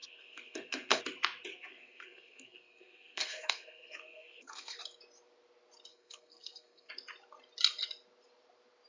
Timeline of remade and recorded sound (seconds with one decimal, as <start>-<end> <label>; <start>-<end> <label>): 0.0-1.0 remade; 1.0-1.5 recorded; 1.5-4.8 remade; 4.8-5.9 recorded; 5.9-6.9 remade; 6.9-8.9 recorded